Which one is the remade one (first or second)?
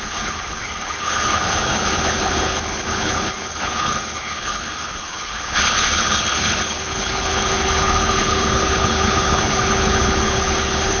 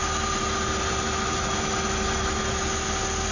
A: first